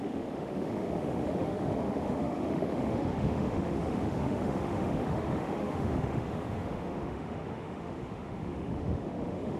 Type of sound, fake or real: fake